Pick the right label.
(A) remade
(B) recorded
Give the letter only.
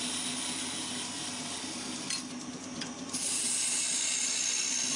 B